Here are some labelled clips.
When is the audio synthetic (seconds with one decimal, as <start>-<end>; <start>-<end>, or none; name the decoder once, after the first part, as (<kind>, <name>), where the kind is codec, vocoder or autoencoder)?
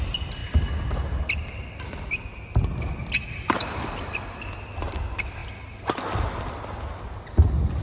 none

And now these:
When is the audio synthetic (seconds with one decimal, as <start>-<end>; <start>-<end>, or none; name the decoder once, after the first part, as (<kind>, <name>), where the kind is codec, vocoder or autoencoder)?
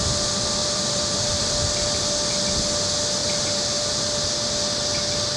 0.6-1.6 (vocoder, BigVGAN v2); 3.2-4.3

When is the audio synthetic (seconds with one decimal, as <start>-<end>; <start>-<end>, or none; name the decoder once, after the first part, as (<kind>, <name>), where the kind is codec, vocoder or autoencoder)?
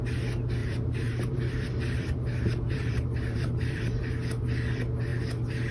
0.6-4.0 (vocoder, BigVGAN v2)